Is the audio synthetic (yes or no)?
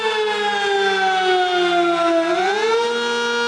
no